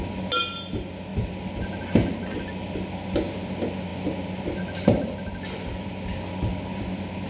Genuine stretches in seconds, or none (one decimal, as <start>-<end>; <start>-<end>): 0.0-7.3